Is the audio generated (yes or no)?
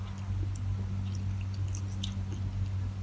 no